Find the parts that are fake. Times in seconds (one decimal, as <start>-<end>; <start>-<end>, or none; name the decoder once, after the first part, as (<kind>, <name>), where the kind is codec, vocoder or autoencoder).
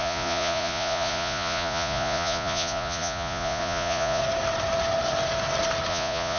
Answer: 0.0-4.2 (vocoder, Vocos); 5.9-6.4